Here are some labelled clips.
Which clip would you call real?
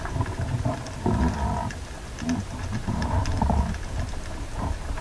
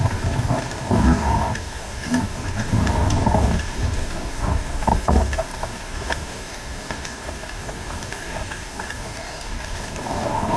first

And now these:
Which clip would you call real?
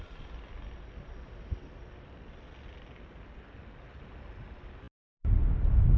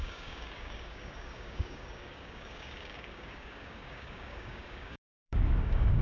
first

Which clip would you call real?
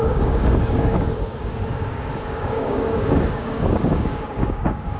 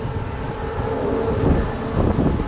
second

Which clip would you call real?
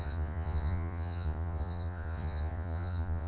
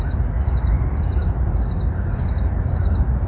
second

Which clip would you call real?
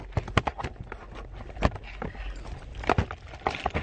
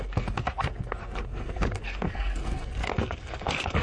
first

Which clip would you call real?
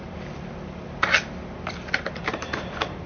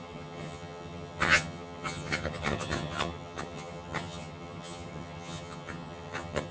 first